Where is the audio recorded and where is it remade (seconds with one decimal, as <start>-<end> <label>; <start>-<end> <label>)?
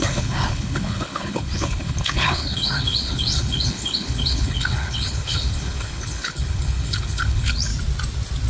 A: 0.0-7.7 remade; 7.7-8.5 recorded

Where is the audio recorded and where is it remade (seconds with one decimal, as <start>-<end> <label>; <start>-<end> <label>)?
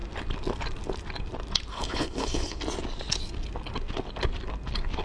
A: 0.0-1.7 recorded; 1.7-2.6 remade; 2.6-5.0 recorded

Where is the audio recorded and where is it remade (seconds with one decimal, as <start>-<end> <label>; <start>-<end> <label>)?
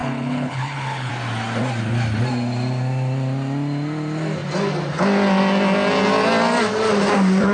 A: 0.0-1.1 remade; 1.1-7.5 recorded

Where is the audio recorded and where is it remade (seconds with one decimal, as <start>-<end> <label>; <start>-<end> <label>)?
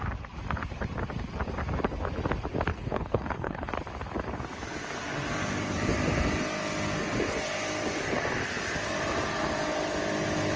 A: 0.0-2.7 recorded; 2.7-3.7 remade; 3.7-10.6 recorded